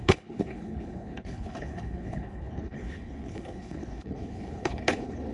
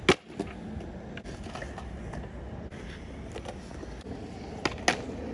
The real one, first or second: second